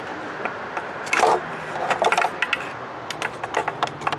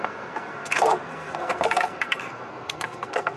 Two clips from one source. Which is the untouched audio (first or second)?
first